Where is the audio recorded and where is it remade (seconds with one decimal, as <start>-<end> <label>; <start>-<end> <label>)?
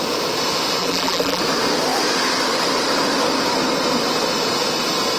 0.0-0.8 recorded; 0.8-1.4 remade; 1.4-5.2 recorded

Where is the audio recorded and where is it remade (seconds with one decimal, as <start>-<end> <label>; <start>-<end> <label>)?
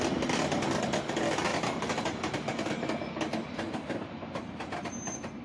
0.0-1.5 recorded; 1.5-2.7 remade; 2.7-3.4 recorded; 3.4-5.4 remade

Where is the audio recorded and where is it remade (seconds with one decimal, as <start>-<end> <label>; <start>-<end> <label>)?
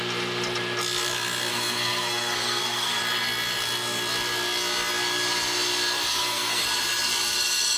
0.0-1.5 recorded; 1.5-3.0 remade; 3.0-6.1 recorded; 6.1-6.6 remade; 6.6-7.8 recorded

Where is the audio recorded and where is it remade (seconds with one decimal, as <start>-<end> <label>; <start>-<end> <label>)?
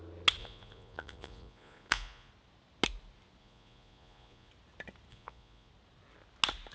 0.0-0.4 recorded; 0.4-2.3 remade; 2.3-3.4 recorded; 3.4-4.5 remade; 4.5-5.1 recorded; 5.1-5.7 remade; 5.7-6.7 recorded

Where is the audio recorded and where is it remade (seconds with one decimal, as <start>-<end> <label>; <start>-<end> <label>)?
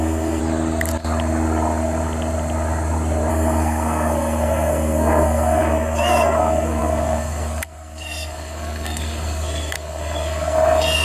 0.0-0.4 remade; 0.4-3.3 recorded; 3.3-11.0 remade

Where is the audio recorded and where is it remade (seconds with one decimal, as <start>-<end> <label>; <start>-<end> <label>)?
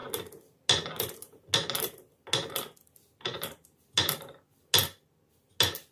0.0-5.9 recorded